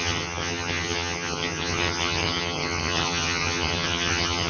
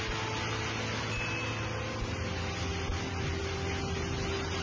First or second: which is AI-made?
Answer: first